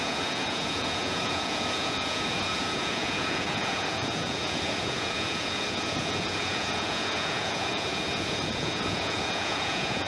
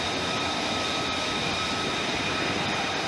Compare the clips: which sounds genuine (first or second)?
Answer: second